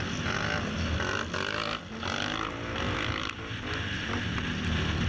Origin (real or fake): real